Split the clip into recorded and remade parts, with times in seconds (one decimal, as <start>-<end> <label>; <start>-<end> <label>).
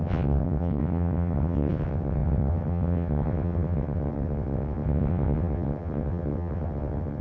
0.0-7.2 remade